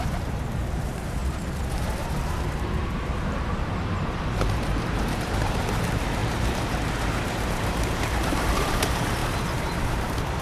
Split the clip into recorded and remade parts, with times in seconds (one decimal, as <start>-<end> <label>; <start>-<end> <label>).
0.0-1.2 remade; 1.2-1.8 recorded; 1.8-10.4 remade